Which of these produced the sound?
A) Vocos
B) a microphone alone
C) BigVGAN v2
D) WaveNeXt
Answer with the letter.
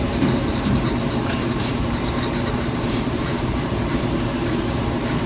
C